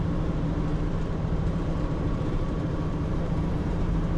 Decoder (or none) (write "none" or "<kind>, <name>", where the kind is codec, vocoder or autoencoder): vocoder, BigVGAN v2